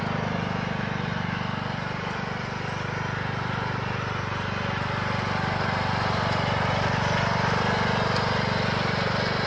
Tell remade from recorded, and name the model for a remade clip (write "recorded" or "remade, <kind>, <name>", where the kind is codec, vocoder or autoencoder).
recorded